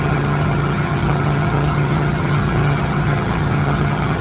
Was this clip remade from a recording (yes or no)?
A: yes